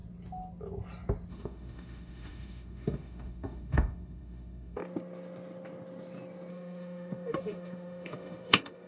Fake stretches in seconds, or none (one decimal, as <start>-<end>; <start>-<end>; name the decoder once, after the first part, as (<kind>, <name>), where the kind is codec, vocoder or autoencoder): 1.3-4.8 (autoencoder, DAC-VAE); 6.5-8.9